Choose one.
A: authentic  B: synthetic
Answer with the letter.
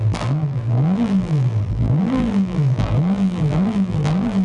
B